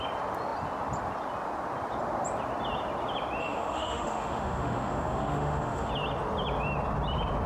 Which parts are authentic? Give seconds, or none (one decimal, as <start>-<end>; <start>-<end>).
0.0-3.4; 5.9-7.5